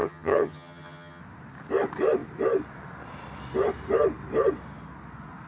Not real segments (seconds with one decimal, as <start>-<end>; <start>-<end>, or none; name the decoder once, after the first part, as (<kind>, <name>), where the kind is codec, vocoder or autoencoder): 0.0-1.2 (vocoder, HiFi-GAN)